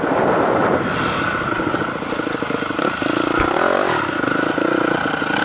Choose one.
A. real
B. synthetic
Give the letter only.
A